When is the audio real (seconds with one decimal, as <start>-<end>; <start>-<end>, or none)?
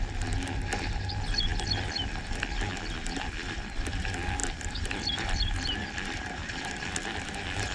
0.0-4.4; 7.3-7.7